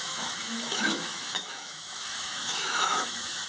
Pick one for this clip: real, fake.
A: fake